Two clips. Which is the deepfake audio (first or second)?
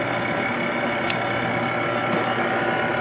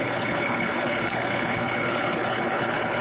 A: second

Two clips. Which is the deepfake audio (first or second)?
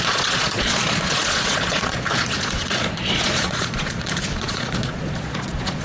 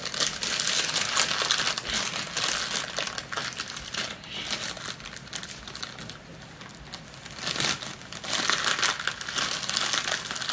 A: first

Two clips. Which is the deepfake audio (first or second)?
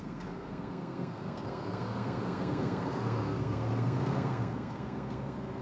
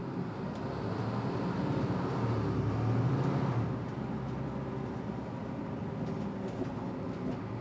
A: first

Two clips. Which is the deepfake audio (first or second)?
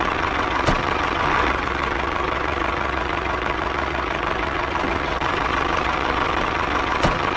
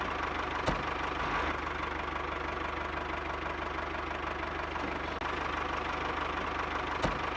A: first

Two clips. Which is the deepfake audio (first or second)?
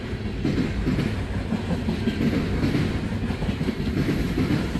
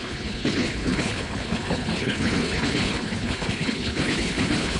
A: second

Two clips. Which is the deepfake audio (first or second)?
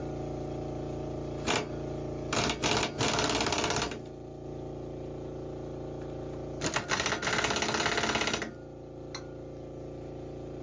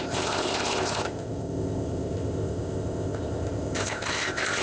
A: second